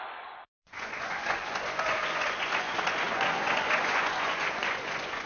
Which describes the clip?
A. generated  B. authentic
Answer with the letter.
A